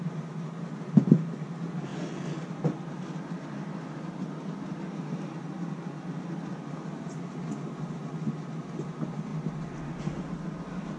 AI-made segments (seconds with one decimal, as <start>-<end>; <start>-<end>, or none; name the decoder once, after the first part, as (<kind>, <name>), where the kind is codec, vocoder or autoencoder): none